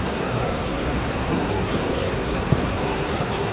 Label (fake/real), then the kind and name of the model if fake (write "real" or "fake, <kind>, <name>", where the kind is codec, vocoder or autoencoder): fake, codec, SNAC